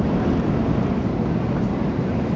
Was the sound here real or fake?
real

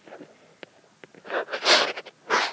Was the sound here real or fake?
real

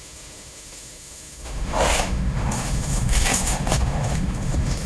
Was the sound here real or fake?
fake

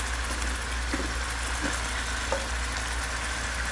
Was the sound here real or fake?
real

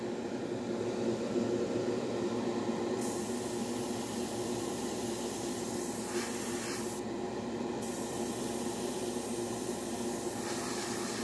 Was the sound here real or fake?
real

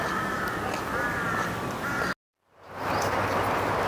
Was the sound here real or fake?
real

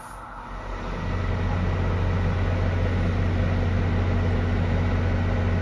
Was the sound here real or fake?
real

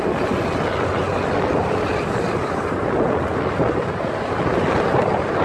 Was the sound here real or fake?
real